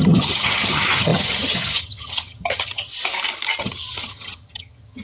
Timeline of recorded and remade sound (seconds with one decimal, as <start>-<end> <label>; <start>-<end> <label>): 0.0-2.9 remade; 2.9-3.6 recorded; 3.6-5.0 remade